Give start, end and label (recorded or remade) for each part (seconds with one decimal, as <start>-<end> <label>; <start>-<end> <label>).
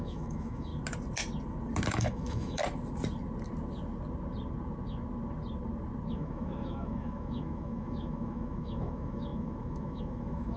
0.0-0.7 remade; 0.7-1.9 recorded; 1.9-2.6 remade; 2.6-6.1 recorded; 6.1-10.6 remade